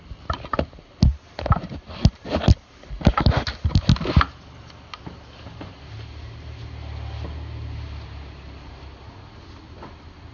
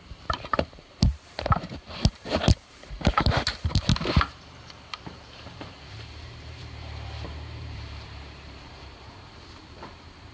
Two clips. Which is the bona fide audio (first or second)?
first